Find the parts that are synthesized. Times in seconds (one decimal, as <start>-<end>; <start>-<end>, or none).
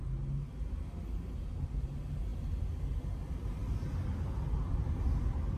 none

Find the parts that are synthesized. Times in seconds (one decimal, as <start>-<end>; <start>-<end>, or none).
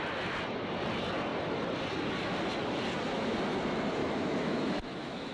4.0-5.3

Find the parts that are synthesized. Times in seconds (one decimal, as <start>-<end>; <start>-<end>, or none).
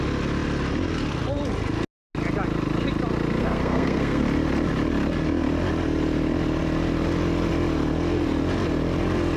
3.4-4.2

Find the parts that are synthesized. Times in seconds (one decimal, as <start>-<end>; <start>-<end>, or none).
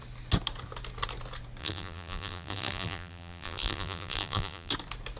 1.6-4.7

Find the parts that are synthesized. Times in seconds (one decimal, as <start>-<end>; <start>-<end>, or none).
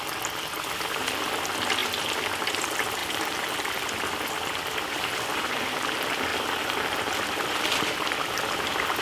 3.0-4.8; 6.3-8.6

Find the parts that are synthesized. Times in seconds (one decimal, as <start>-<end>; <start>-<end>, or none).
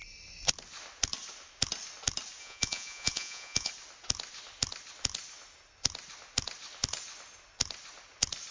2.4-3.7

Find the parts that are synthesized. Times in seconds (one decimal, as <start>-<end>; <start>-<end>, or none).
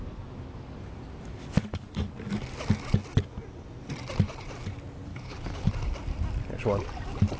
5.1-5.7